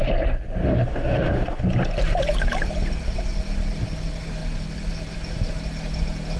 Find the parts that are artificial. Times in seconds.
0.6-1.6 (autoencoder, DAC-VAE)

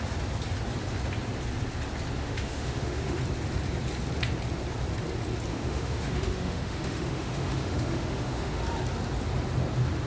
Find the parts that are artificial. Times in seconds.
2.2-3.2 (autoencoder, DAC-VAE); 5.5-8.6

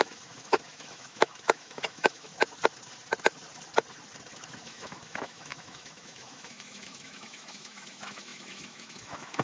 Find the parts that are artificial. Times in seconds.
0.0-2.3 (autoencoder, DAC-VAE); 4.6-9.4

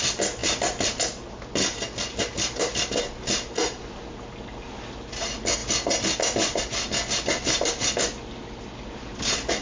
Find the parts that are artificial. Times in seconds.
none

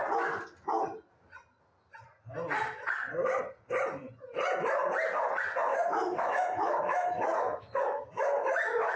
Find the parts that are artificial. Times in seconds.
5.7-9.0 (autoencoder, DAC-VAE)